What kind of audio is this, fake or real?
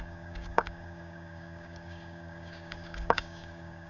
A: fake